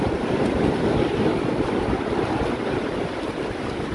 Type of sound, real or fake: real